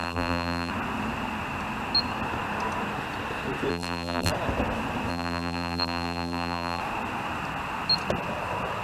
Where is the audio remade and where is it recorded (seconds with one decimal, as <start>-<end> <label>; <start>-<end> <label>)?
0.0-0.7 remade; 0.7-3.7 recorded; 3.7-4.3 remade; 4.3-5.1 recorded; 5.1-6.8 remade; 6.8-8.8 recorded

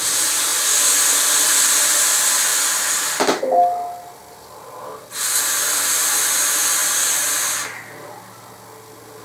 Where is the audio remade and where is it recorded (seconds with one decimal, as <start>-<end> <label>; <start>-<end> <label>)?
0.0-9.2 recorded

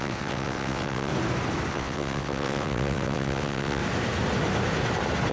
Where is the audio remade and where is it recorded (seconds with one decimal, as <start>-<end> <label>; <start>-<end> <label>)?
0.0-1.1 remade; 1.1-1.7 recorded; 1.7-3.8 remade; 3.8-5.3 recorded

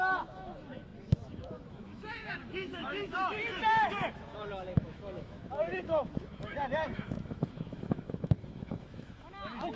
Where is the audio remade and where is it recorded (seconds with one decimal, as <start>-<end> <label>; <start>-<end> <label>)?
0.0-9.8 remade

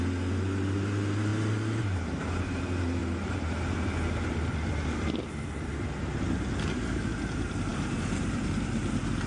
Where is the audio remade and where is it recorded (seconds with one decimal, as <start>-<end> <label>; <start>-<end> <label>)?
0.0-7.7 recorded; 7.7-8.5 remade; 8.5-9.3 recorded